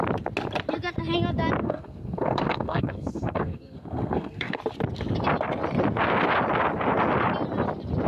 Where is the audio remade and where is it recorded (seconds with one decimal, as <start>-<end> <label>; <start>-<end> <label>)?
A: 0.0-1.6 recorded; 1.6-4.6 remade; 4.6-8.1 recorded